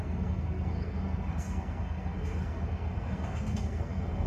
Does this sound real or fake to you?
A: fake